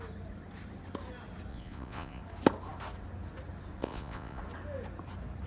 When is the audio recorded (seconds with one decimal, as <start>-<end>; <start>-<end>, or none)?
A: 0.0-1.5; 2.2-3.8; 4.4-5.5